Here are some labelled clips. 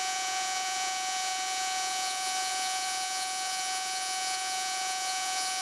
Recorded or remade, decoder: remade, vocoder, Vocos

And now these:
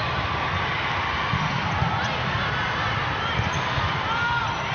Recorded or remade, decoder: recorded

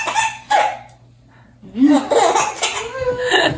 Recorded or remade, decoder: recorded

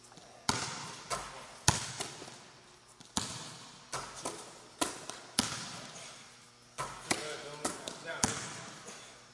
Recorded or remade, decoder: recorded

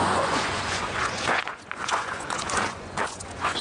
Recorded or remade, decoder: remade, vocoder, Vocos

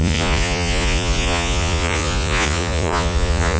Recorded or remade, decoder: remade, vocoder, Vocos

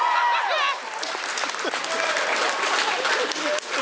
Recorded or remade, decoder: recorded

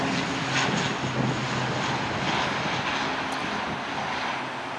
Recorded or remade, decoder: recorded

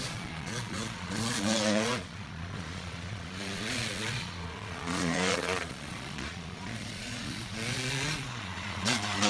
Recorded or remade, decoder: remade, vocoder, Vocos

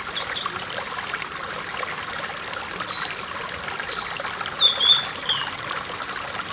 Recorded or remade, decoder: recorded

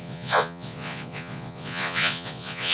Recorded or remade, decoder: remade, vocoder, Vocos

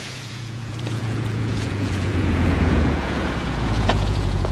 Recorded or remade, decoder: remade, vocoder, Vocos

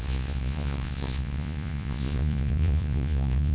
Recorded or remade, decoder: remade, vocoder, Vocos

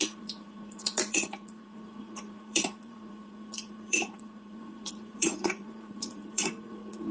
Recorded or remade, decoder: remade, vocoder, Vocos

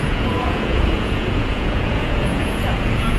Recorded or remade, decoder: remade, vocoder, Vocos